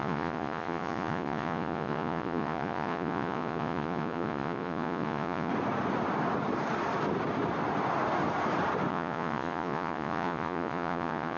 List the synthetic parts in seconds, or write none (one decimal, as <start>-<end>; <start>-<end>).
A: 0.0-5.5; 8.9-11.4